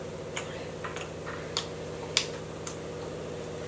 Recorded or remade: recorded